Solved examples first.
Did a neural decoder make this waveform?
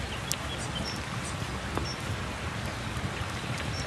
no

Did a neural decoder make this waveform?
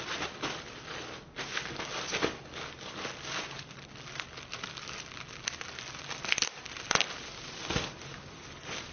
no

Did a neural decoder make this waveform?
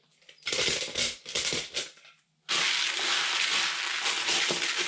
no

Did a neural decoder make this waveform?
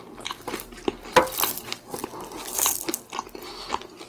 no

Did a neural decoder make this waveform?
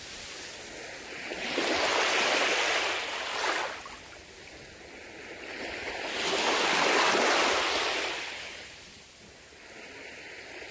no